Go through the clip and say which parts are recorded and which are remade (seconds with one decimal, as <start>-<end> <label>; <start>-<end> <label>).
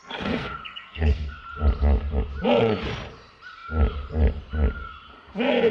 0.0-1.4 remade; 1.4-5.7 recorded